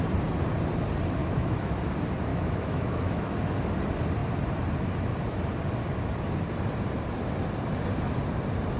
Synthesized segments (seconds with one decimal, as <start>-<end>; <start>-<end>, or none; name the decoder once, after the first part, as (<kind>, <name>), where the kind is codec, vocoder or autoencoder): 1.2-1.8 (autoencoder, DAC-VAE); 2.3-3.3